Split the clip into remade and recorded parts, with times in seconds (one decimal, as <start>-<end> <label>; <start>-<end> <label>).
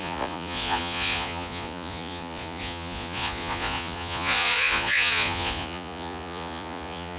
0.0-7.2 remade